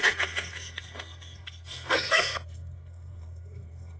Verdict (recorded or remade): remade